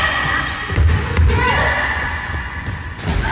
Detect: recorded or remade remade